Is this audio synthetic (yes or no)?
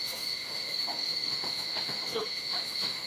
yes